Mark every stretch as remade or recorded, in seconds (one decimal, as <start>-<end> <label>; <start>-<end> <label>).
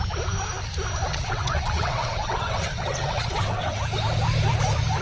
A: 0.0-1.1 recorded; 1.1-3.8 remade; 3.8-5.0 recorded